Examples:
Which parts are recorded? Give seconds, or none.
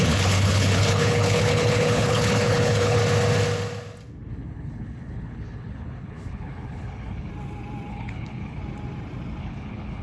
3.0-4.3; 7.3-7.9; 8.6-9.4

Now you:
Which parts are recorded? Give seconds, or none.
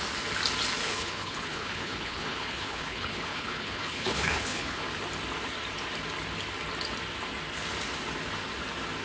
0.0-0.8; 4.8-9.0